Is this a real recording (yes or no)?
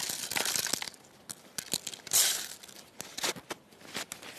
yes